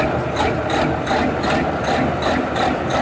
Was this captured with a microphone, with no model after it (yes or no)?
yes